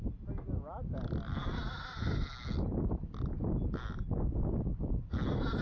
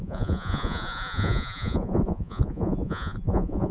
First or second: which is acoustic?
first